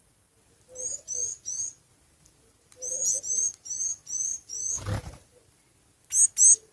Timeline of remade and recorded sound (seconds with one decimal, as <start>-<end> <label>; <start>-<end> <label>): 0.0-4.3 recorded; 4.3-4.8 remade; 4.8-6.7 recorded